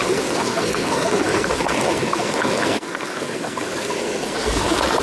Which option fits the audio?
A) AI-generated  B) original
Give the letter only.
A